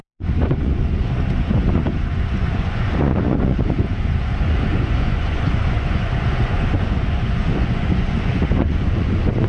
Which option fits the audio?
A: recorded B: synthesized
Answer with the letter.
B